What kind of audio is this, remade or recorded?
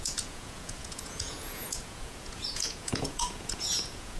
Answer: remade